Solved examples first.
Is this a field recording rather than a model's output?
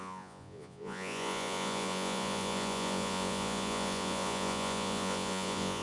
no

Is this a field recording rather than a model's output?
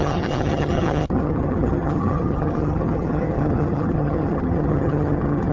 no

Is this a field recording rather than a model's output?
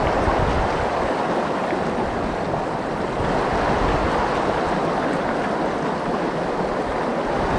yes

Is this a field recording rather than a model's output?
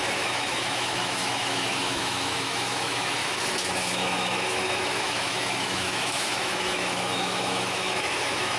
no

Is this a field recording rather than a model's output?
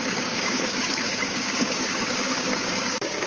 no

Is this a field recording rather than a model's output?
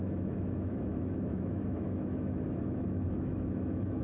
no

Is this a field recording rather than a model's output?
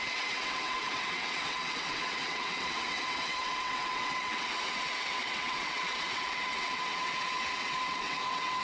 no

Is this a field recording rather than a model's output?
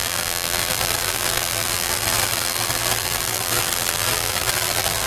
no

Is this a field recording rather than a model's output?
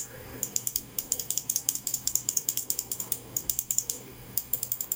no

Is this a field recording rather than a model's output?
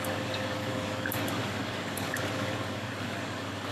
no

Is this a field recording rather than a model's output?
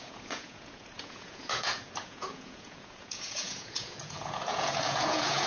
no